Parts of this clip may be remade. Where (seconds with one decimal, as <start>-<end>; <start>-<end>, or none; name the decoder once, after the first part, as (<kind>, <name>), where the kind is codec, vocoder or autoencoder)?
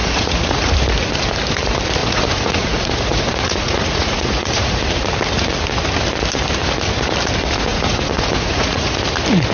0.0-0.7 (vocoder, Vocos); 2.0-4.8; 7.7-8.9